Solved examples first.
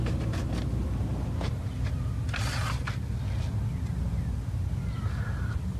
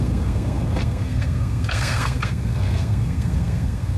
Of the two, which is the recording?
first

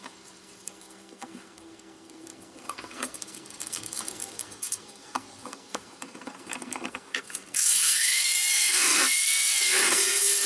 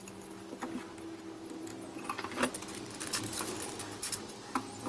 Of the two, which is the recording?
second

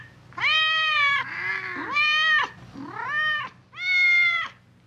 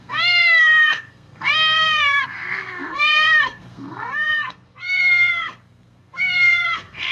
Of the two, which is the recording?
first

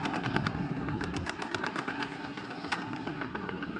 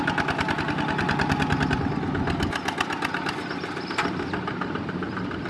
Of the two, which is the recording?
second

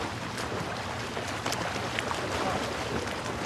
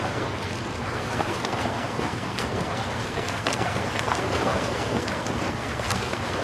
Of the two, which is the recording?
first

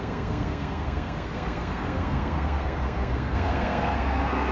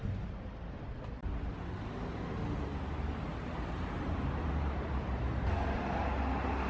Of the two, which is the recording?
second